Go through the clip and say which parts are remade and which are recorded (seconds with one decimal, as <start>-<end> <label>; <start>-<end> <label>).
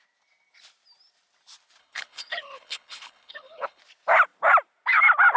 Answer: 0.0-1.8 recorded; 1.8-3.8 remade; 3.8-5.4 recorded